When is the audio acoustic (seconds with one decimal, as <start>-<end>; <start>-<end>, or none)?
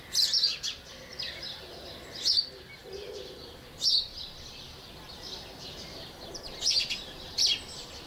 0.0-1.1; 2.3-2.8; 6.4-8.1